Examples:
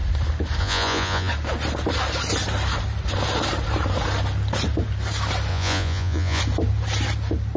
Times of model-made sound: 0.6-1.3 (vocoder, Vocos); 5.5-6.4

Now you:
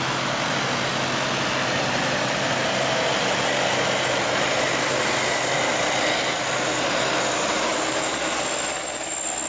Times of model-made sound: none